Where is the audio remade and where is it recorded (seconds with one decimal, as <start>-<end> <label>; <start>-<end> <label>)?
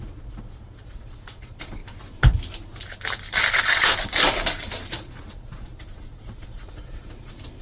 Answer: 0.0-1.8 remade; 1.8-3.5 recorded; 3.5-3.9 remade; 3.9-4.9 recorded; 4.9-7.6 remade